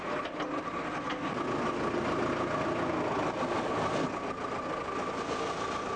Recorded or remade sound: recorded